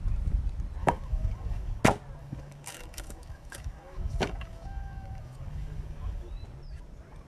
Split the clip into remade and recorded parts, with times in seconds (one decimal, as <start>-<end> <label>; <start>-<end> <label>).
0.0-0.8 recorded; 0.8-1.8 remade; 1.8-2.2 recorded; 2.2-6.3 remade; 6.3-7.3 recorded